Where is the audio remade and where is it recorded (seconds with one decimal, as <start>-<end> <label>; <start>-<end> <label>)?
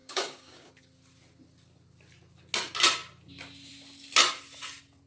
0.0-0.7 remade; 0.7-5.1 recorded